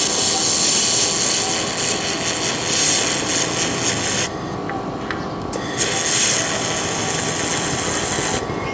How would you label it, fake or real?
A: real